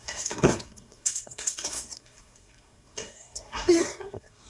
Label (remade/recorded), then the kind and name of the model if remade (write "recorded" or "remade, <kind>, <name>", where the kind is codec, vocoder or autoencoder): remade, codec, SNAC